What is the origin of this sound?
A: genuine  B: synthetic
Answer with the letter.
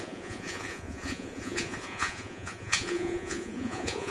B